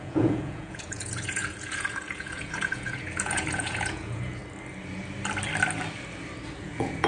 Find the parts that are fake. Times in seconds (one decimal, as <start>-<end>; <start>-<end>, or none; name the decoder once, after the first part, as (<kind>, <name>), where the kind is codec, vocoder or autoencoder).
0.0-4.4 (vocoder, Vocos); 6.6-7.1